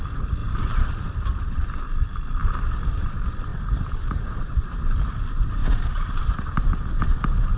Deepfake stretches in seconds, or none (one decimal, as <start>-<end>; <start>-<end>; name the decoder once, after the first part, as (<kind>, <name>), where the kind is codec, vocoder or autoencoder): 0.4-1.1 (vocoder, BigVGAN v2); 3.5-4.7; 5.6-6.9